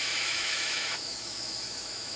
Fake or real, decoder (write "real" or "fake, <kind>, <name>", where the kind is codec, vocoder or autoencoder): fake, autoencoder, DAC-VAE